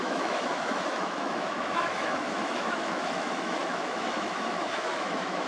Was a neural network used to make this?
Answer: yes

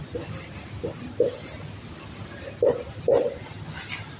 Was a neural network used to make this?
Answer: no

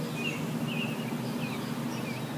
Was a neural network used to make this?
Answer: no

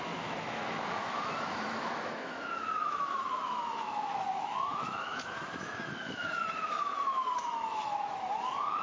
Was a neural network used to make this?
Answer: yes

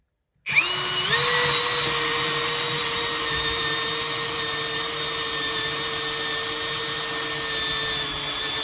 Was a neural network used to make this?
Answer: no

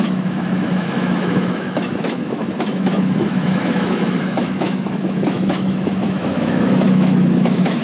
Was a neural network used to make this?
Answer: yes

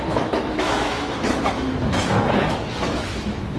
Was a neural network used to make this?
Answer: yes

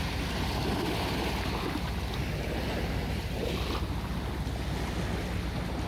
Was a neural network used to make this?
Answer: no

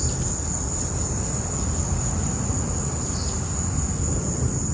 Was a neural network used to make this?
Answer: no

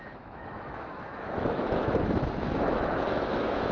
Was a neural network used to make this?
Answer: yes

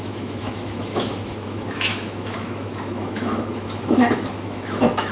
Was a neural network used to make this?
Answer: yes